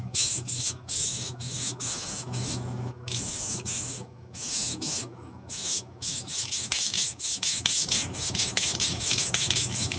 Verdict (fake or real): fake